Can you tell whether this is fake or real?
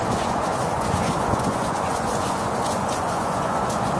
fake